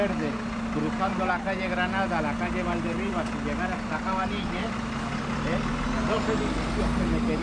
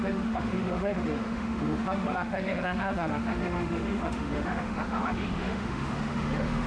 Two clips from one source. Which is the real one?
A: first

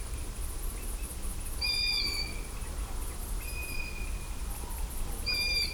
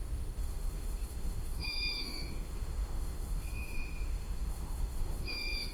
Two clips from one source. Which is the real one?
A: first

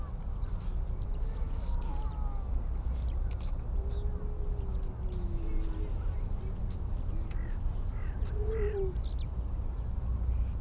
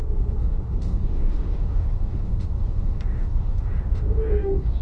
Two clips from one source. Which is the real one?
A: first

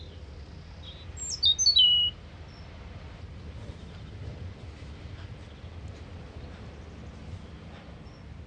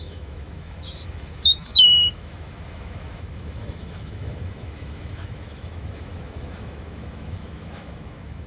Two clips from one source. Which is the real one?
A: first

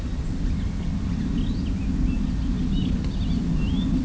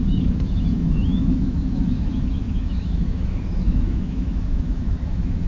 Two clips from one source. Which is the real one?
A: first